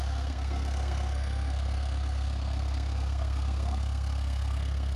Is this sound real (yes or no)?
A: no